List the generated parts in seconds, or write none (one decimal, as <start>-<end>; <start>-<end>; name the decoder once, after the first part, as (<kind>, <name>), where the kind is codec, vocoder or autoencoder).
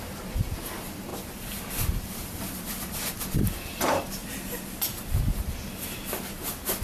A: 0.0-1.1 (vocoder, BigVGAN v2); 2.0-4.2